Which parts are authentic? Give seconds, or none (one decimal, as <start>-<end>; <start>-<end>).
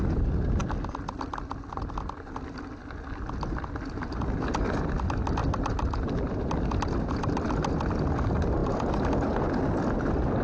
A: 0.0-10.4